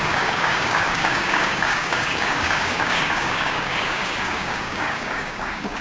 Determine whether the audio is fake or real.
fake